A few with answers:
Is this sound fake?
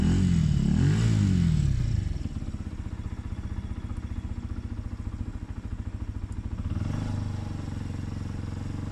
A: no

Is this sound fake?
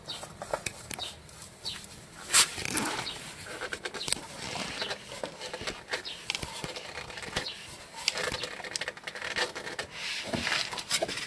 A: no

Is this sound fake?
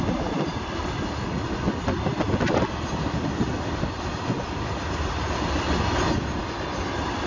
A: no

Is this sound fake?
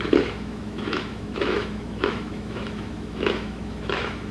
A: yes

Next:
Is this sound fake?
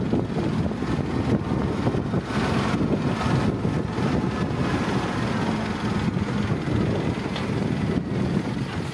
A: no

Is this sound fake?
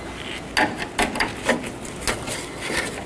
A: no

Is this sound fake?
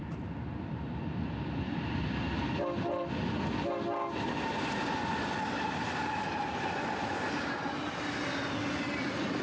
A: no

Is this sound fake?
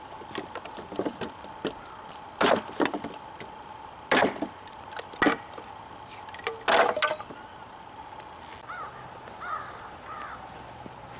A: no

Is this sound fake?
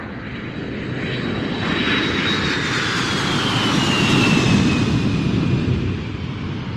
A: no